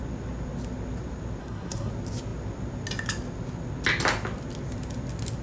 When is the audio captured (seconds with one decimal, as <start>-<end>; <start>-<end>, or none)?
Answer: 0.0-1.4; 1.9-5.4